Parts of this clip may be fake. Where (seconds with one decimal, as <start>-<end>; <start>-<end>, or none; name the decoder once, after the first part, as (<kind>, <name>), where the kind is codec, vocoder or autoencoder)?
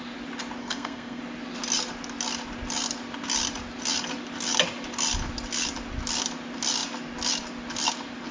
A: 0.6-1.2 (codec, SNAC)